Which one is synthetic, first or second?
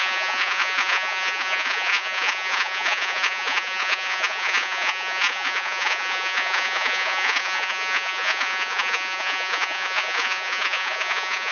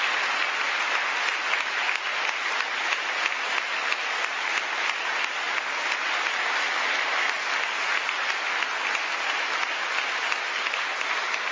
first